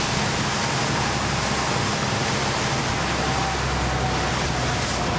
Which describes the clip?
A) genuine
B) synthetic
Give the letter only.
A